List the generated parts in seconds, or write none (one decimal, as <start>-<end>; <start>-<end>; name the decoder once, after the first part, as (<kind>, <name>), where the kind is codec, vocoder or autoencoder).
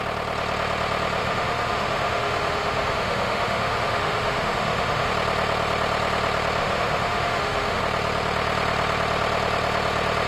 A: 1.2-5.1 (autoencoder, DAC-VAE); 6.6-7.8